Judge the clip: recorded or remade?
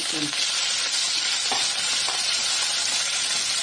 recorded